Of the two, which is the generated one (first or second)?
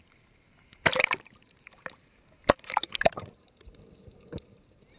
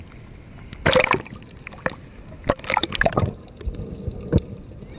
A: first